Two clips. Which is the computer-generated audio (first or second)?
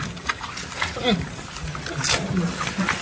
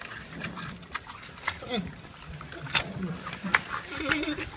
second